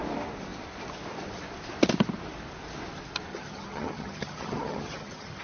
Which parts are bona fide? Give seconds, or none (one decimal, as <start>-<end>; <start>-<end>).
0.0-3.3